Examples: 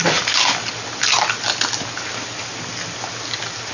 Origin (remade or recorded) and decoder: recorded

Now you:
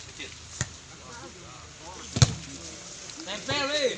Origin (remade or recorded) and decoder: recorded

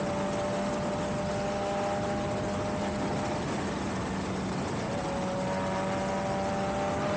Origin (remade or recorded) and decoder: recorded